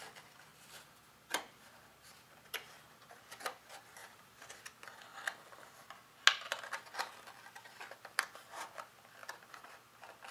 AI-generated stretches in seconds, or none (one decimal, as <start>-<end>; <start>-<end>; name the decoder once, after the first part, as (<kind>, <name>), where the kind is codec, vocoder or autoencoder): 0.5-3.2 (vocoder, BigVGAN v2); 4.0-4.5; 9.2-9.7